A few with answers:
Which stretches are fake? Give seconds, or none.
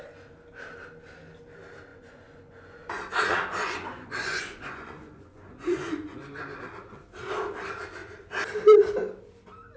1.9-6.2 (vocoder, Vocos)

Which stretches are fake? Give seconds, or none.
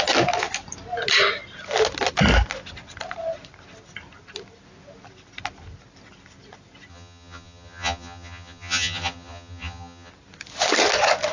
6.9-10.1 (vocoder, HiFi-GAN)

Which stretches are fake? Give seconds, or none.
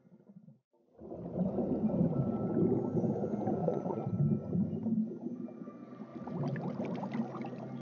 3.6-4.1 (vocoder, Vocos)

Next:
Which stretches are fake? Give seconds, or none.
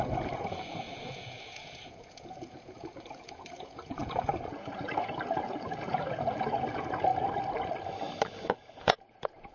0.0-7.1 (vocoder, Vocos); 8.8-9.5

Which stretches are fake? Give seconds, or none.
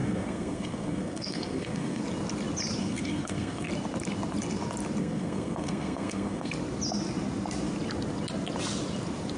0.0-2.0 (codec, SNAC); 2.8-3.7; 5.0-6.5